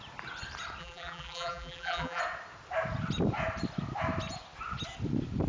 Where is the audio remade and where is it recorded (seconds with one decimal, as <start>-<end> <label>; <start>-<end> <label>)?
0.0-0.8 recorded; 0.8-2.2 remade; 2.2-5.5 recorded